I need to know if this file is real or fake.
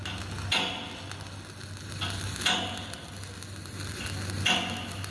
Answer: real